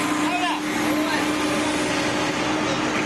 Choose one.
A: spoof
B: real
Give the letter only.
B